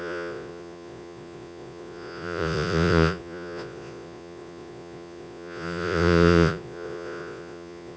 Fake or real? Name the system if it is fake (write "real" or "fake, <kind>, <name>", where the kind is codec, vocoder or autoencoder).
fake, vocoder, Vocos